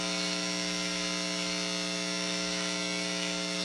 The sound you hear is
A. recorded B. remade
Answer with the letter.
B